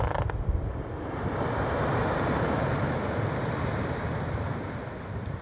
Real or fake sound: real